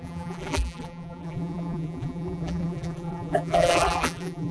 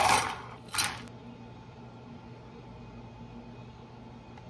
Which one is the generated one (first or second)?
first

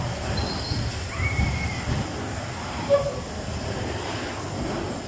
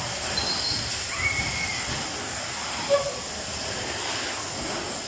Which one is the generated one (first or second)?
second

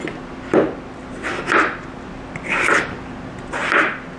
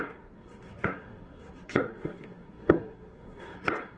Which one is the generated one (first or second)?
second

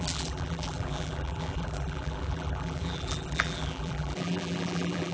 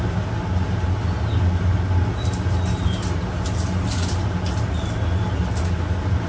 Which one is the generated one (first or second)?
first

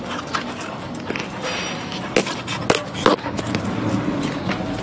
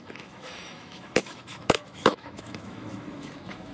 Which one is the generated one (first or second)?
second